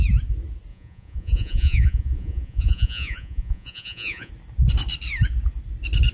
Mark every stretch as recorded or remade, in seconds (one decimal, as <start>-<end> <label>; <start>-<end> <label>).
0.0-0.7 recorded; 0.7-4.3 remade; 4.3-6.1 recorded